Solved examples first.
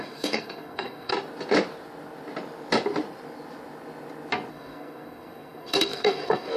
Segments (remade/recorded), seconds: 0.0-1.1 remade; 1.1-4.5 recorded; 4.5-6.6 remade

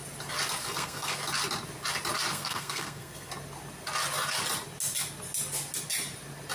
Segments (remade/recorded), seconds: 0.0-0.6 recorded; 0.6-1.2 remade; 1.2-2.3 recorded; 2.3-3.3 remade; 3.3-6.5 recorded

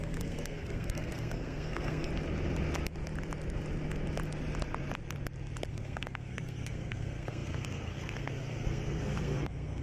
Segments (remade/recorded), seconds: 0.0-2.1 remade; 2.1-5.7 recorded; 5.7-9.8 remade